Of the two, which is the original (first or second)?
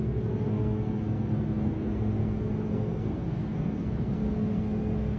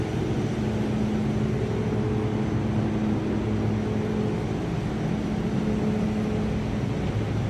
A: second